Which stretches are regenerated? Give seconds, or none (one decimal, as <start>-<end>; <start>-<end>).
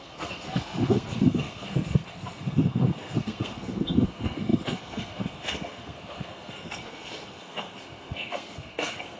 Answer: 0.0-9.2